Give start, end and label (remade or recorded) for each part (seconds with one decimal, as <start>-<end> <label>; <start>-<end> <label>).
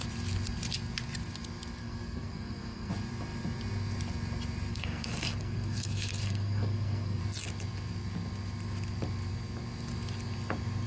0.0-1.8 recorded; 1.8-2.9 remade; 2.9-4.7 recorded; 4.7-7.2 remade; 7.2-10.9 recorded